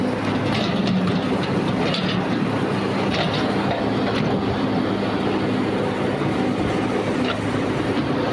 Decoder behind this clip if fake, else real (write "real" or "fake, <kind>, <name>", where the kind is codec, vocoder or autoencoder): real